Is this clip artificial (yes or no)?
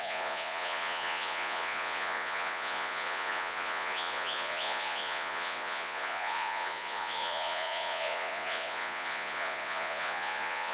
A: yes